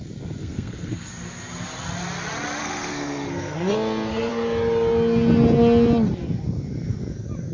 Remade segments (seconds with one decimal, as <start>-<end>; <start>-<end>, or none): 0.4-1.1; 2.6-4.3